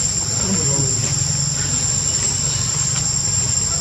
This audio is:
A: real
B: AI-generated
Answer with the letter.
A